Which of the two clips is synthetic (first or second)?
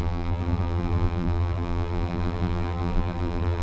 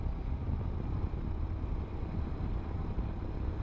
first